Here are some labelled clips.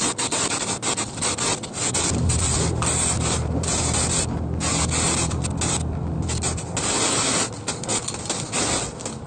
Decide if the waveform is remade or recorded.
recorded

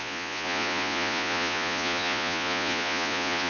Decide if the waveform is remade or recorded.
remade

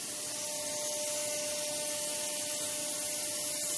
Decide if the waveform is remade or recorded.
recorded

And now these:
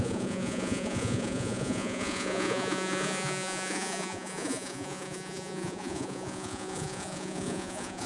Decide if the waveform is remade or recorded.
remade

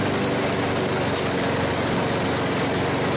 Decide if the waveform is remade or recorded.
recorded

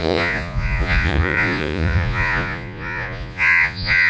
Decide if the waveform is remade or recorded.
remade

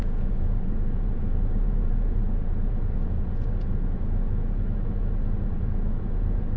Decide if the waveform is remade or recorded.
remade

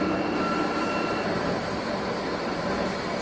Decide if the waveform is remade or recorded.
recorded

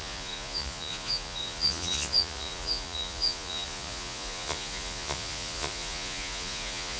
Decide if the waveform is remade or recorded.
remade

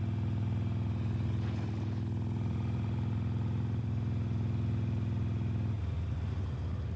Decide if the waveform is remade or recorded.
recorded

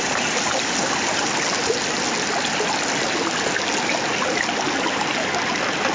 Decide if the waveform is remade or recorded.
recorded